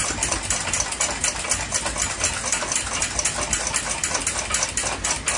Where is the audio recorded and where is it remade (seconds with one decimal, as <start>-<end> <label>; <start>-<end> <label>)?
0.0-5.4 recorded